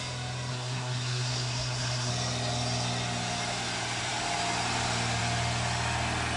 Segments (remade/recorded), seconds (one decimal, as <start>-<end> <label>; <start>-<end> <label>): 0.0-0.5 recorded; 0.5-2.1 remade; 2.1-6.4 recorded